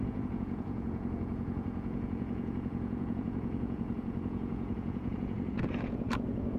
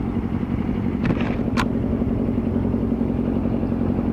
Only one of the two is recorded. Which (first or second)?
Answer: second